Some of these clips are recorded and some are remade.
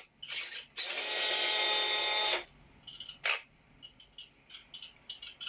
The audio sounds recorded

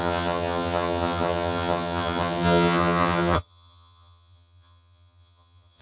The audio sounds remade